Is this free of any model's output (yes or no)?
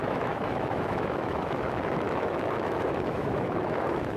no